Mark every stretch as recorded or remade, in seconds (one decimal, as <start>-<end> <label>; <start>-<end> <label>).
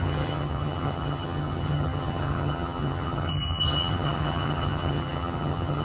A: 0.0-5.8 remade